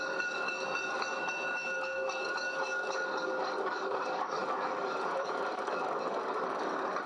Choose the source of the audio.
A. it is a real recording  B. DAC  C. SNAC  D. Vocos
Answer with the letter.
B